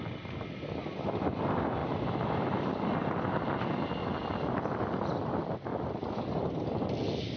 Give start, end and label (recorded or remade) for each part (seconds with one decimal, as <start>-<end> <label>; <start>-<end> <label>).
0.0-7.4 recorded